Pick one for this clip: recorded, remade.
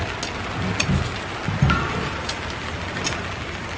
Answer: recorded